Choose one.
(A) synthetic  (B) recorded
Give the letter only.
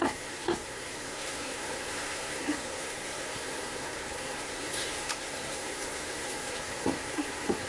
A